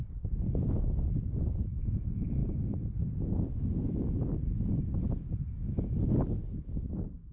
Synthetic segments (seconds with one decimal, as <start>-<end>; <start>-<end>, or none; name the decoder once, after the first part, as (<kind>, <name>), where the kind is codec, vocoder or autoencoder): none